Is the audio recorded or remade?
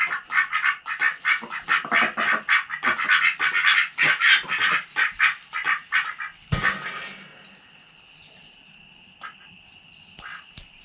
recorded